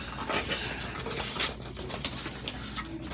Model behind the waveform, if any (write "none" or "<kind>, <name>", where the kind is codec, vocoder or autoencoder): none